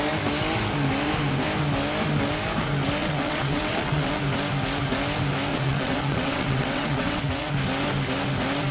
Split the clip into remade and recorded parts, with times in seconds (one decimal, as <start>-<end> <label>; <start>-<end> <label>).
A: 0.0-3.0 recorded; 3.0-4.1 remade; 4.1-5.5 recorded; 5.5-7.5 remade; 7.5-8.7 recorded